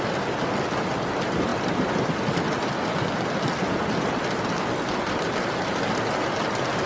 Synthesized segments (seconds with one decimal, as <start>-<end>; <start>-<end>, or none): none